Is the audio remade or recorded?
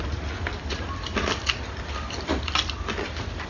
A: recorded